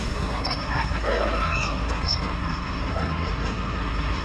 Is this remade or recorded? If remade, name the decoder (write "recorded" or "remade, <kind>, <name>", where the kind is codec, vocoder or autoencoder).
remade, codec, SNAC